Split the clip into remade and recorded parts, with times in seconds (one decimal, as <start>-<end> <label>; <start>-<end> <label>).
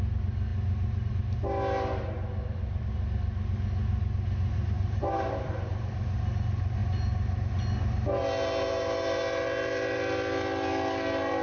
0.0-4.5 recorded; 4.5-5.9 remade; 5.9-11.4 recorded